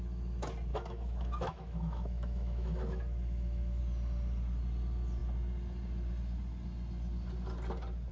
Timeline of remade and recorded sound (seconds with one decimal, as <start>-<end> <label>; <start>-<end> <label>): 0.0-0.7 recorded; 0.7-3.8 remade; 3.8-8.1 recorded